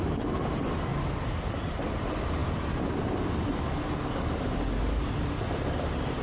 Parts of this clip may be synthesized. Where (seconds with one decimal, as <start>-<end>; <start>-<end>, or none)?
none